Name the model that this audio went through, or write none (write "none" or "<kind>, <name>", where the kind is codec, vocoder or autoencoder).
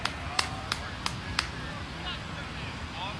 none